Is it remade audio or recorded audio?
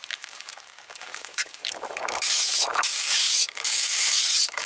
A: remade